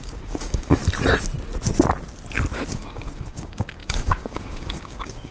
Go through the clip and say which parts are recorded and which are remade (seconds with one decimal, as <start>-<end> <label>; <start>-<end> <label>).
0.0-0.8 remade; 0.8-2.7 recorded; 2.7-5.3 remade

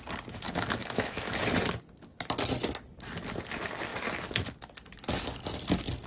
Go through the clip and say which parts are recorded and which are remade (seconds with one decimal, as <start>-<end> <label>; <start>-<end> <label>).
0.0-0.8 recorded; 0.8-1.3 remade; 1.3-6.1 recorded

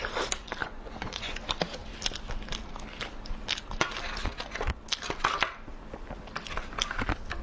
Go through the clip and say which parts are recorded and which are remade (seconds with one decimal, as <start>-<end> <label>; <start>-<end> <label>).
0.0-0.6 recorded; 0.6-1.4 remade; 1.4-7.4 recorded

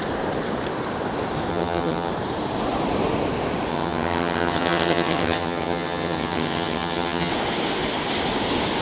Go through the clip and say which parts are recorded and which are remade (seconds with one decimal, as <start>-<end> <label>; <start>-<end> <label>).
0.0-1.5 recorded; 1.5-2.1 remade; 2.1-3.7 recorded; 3.7-7.3 remade; 7.3-8.8 recorded

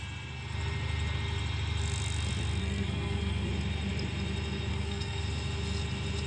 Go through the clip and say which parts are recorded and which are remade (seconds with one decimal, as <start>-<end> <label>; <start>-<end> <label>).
0.0-2.6 recorded; 2.6-3.5 remade; 3.5-4.7 recorded; 4.7-5.2 remade; 5.2-6.3 recorded

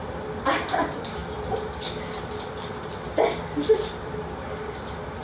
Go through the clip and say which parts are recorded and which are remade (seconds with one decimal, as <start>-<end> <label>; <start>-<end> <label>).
0.0-5.2 recorded